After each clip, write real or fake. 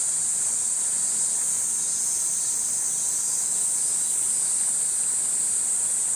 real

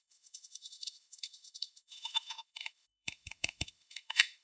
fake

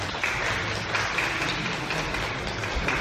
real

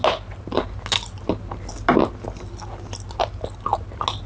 real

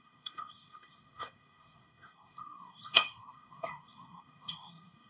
fake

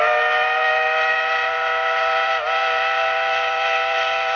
real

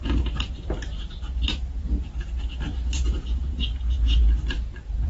fake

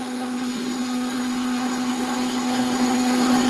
fake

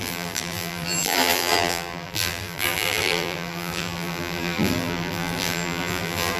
fake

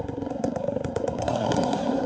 fake